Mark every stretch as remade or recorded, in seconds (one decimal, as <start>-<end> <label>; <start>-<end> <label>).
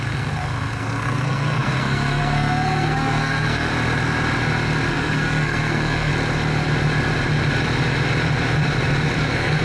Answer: 0.0-3.7 remade; 3.7-4.9 recorded; 4.9-6.1 remade; 6.1-9.2 recorded; 9.2-9.6 remade